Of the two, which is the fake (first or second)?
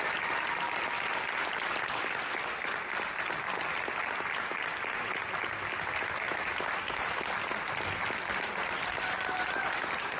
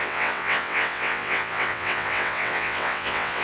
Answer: second